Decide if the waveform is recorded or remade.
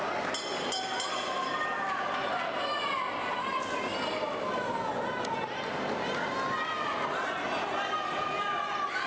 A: recorded